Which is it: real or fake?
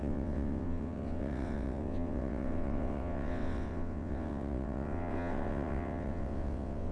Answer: fake